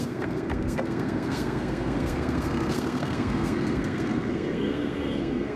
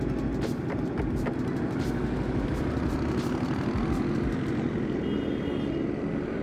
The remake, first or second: first